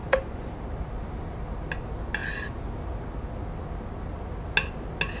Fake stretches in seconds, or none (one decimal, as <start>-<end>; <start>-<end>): 0.0-0.5